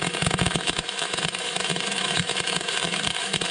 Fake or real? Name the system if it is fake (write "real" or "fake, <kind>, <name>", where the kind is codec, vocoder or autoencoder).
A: fake, autoencoder, DAC-VAE